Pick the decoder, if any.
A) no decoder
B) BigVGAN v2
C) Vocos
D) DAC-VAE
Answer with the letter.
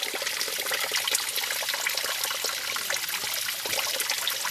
A